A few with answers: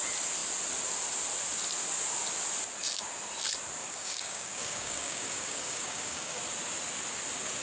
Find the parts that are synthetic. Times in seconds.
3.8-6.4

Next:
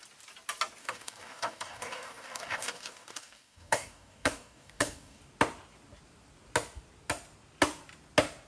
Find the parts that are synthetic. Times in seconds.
0.8-5.2